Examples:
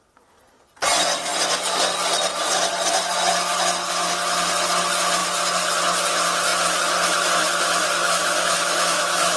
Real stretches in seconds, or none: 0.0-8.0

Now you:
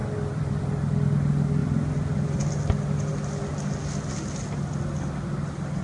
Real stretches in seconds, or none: 0.6-1.6; 2.4-5.8

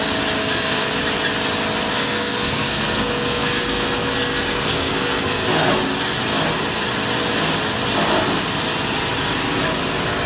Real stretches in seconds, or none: 0.0-0.4; 0.9-1.9; 5.7-10.3

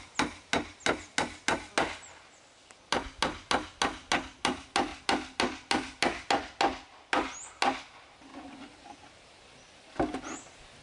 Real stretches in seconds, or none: 0.0-8.3; 9.3-10.8

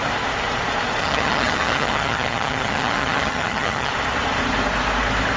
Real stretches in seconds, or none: 0.0-1.0; 3.9-5.4

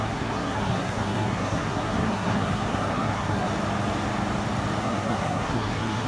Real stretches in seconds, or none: 3.5-4.8

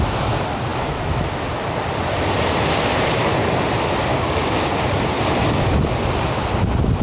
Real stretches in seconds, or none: 0.0-4.1; 4.7-7.0

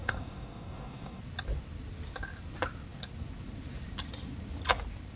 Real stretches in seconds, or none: 1.2-5.2